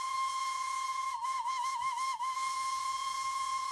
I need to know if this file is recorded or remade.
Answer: remade